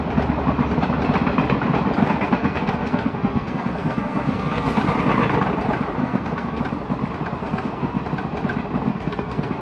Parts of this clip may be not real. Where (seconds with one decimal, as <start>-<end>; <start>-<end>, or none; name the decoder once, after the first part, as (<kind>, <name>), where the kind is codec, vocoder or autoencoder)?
2.0-4.8 (codec, SNAC); 6.0-6.6; 7.4-8.0; 8.9-9.6